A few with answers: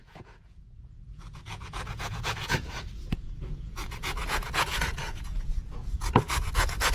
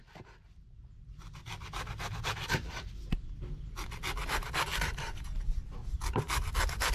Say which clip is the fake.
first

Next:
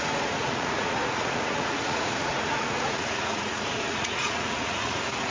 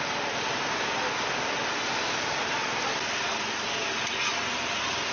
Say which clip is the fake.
first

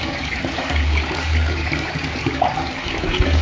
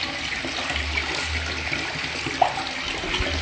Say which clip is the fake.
first